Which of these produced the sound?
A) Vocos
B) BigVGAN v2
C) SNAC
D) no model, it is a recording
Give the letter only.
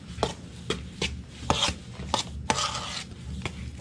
D